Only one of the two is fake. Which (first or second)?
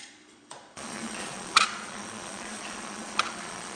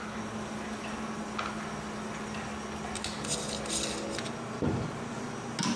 first